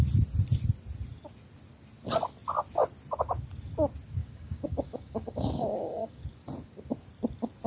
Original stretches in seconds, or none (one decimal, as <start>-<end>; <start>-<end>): 0.0-4.2; 6.2-7.7